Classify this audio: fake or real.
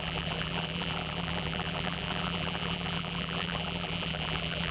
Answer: fake